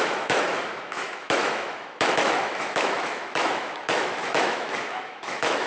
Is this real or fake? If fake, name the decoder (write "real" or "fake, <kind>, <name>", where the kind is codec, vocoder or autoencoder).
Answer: fake, autoencoder, DAC-VAE